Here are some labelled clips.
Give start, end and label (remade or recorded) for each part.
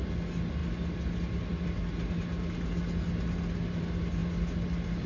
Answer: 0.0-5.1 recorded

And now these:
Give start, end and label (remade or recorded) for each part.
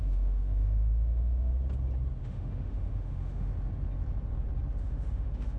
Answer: 0.0-1.5 remade; 1.5-2.2 recorded; 2.2-3.5 remade; 3.5-4.8 recorded; 4.8-5.6 remade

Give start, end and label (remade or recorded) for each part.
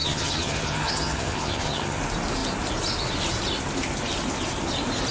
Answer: 0.0-2.0 remade; 2.0-5.1 recorded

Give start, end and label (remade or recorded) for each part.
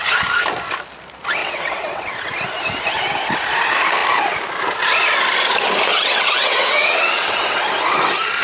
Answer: 0.0-1.4 recorded; 1.4-2.2 remade; 2.2-5.9 recorded; 5.9-7.6 remade; 7.6-8.4 recorded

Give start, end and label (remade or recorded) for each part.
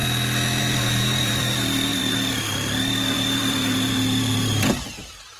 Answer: 0.0-0.6 recorded; 0.6-5.4 remade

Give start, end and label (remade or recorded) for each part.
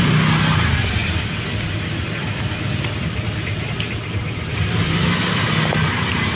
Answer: 0.0-6.4 recorded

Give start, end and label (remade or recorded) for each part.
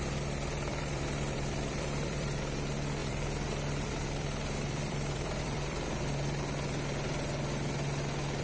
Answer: 0.0-0.7 recorded; 0.7-2.4 remade; 2.4-3.0 recorded; 3.0-6.0 remade; 6.0-8.4 recorded